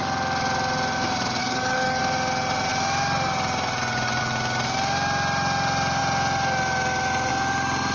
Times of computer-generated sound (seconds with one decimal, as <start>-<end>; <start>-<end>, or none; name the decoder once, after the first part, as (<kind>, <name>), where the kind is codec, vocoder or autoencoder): 1.4-2.0 (codec, DAC)